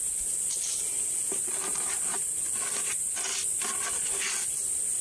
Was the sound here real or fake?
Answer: real